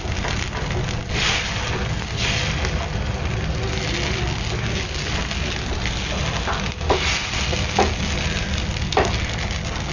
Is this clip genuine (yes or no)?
yes